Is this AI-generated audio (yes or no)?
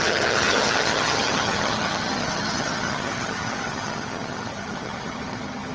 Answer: yes